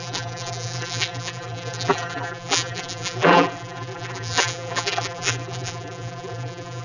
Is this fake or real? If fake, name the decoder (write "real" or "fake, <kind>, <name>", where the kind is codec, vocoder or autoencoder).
fake, vocoder, BigVGAN v2